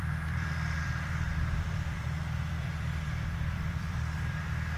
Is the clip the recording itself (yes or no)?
no